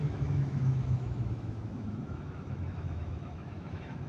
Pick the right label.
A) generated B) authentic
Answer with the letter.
A